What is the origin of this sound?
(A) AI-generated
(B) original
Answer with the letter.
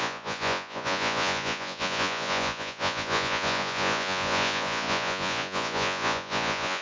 A